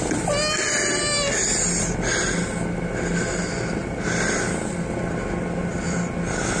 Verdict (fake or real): real